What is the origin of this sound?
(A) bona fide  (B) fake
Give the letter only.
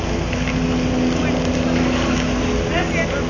A